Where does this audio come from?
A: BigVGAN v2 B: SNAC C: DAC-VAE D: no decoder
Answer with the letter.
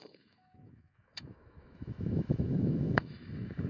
C